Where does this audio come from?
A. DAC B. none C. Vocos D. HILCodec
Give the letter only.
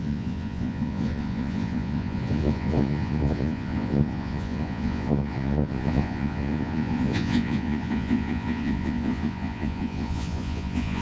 C